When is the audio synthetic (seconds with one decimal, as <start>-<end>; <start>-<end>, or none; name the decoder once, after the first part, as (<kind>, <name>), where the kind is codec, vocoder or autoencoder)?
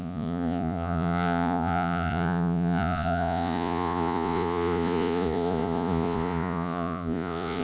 0.0-7.6 (vocoder, Vocos)